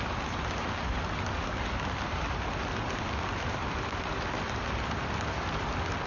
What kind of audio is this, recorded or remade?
recorded